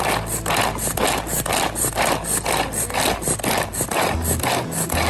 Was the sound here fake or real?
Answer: real